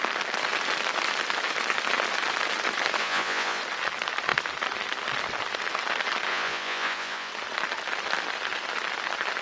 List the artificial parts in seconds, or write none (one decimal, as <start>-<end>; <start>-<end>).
3.0-3.6; 6.3-7.3